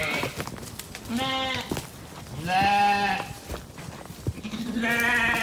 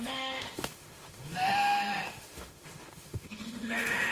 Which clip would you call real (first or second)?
first